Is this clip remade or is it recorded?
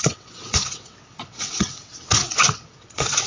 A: remade